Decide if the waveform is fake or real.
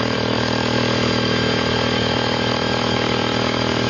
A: fake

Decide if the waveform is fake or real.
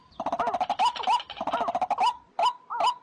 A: real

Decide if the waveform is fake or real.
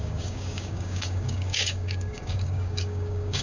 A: fake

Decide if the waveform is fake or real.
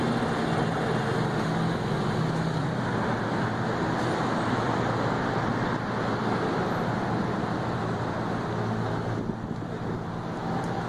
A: real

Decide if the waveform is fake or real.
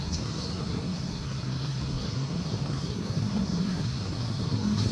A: fake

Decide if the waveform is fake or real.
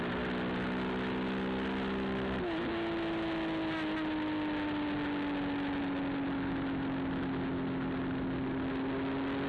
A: real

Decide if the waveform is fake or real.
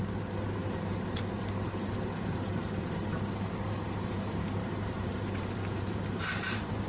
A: fake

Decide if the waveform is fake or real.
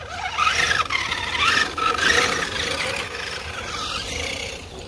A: real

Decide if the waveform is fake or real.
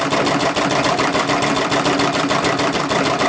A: real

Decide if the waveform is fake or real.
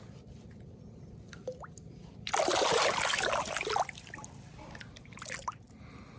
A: real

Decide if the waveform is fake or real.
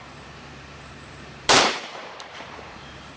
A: fake